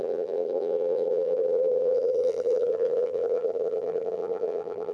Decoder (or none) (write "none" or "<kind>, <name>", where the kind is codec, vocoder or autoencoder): vocoder, BigVGAN v2